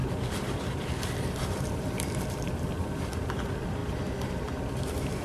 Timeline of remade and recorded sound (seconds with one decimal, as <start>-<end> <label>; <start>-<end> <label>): 0.0-3.8 remade; 3.8-4.7 recorded; 4.7-5.2 remade